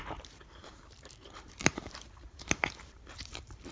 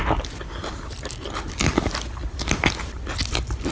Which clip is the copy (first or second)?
first